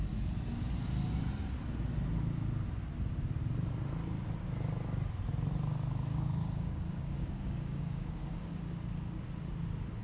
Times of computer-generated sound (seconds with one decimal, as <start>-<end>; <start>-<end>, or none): 6.1-8.6